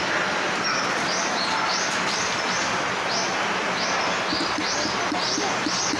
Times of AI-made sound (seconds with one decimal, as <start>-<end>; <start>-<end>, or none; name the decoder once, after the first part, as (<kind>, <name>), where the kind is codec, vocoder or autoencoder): none